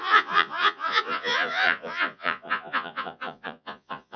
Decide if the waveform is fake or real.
fake